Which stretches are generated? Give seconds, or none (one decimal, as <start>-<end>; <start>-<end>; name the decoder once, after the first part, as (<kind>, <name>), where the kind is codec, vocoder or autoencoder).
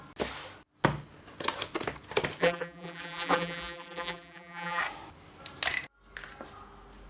2.4-4.8 (vocoder, BigVGAN v2)